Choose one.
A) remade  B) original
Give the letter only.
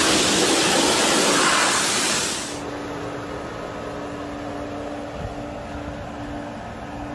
B